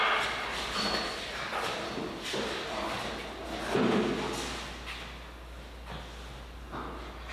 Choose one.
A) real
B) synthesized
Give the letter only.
A